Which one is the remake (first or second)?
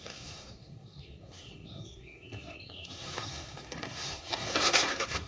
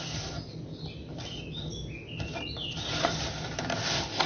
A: first